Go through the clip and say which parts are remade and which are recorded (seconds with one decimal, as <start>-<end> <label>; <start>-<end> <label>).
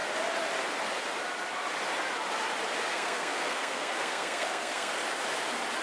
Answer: 0.0-2.9 recorded; 2.9-4.9 remade; 4.9-5.8 recorded